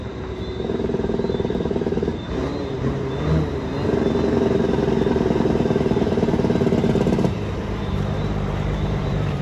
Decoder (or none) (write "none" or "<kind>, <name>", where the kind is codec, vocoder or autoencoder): vocoder, BigVGAN v2